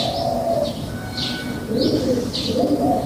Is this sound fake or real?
real